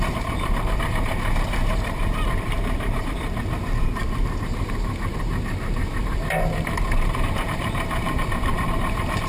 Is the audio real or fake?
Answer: fake